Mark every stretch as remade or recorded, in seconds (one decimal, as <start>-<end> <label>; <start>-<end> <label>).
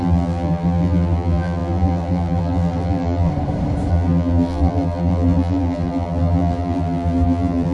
0.0-3.3 remade; 3.3-3.9 recorded; 3.9-7.7 remade